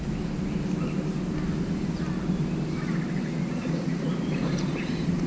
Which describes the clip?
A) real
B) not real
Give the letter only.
A